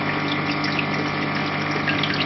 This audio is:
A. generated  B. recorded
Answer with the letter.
B